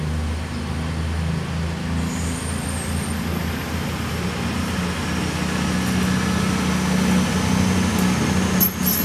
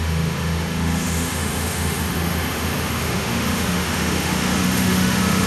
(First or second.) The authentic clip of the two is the first